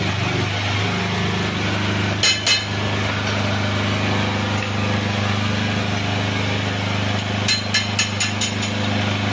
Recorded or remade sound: recorded